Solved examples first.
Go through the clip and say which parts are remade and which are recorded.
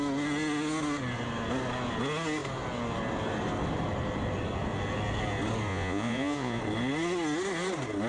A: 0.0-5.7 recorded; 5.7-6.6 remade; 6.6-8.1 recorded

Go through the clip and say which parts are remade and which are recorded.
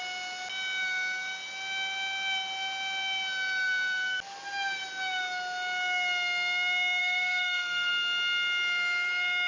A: 0.0-7.0 recorded; 7.0-7.9 remade; 7.9-9.5 recorded